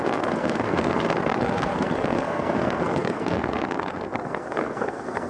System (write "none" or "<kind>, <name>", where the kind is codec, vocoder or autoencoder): codec, SNAC